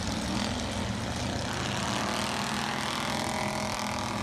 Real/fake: real